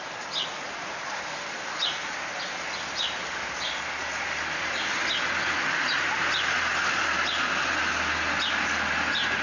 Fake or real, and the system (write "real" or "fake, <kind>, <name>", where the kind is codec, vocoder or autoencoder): real